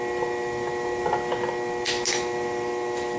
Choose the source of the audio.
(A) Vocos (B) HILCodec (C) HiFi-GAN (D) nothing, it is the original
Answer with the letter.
D